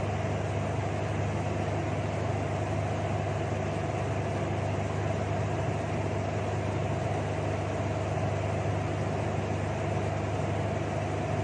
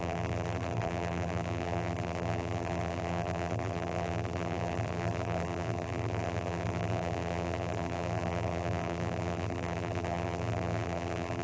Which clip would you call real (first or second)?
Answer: first